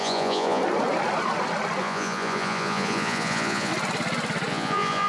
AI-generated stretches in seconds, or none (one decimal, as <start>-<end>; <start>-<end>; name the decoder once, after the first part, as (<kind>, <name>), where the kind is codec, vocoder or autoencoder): 0.0-0.6 (vocoder, Vocos); 1.8-3.7; 4.5-5.1